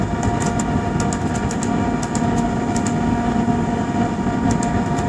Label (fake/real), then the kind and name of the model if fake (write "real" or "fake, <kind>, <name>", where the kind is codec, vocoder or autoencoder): real